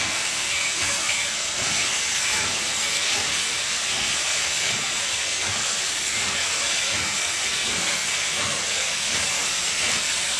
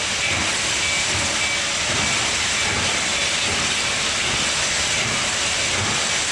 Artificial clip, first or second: first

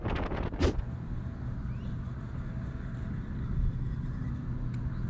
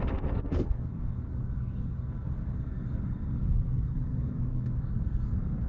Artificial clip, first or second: second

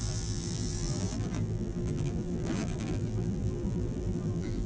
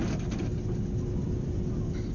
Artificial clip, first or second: first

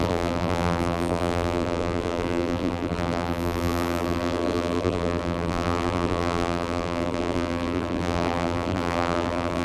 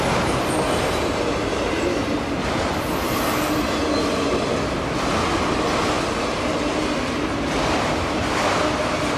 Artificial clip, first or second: first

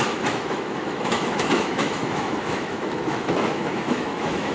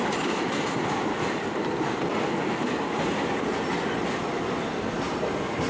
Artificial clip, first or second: first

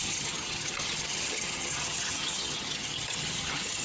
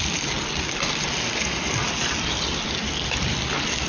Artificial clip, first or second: first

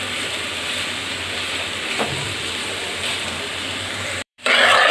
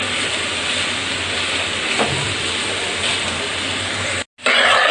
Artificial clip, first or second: first